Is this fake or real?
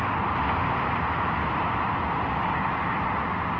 real